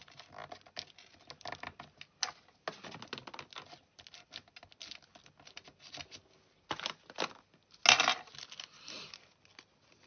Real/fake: real